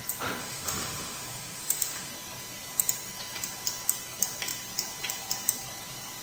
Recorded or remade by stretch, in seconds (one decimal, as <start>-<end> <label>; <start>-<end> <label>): 0.0-0.4 recorded; 0.4-2.1 remade; 2.1-6.2 recorded